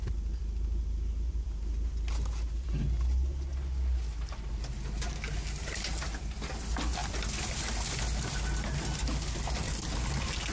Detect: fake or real real